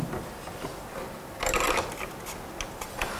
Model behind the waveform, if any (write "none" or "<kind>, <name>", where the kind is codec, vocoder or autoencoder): none